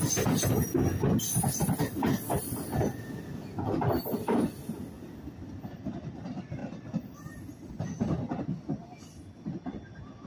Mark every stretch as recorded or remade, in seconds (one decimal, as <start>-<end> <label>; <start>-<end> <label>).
0.0-10.3 recorded